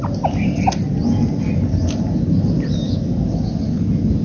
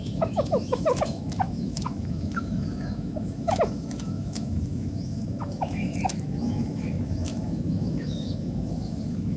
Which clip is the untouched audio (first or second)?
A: first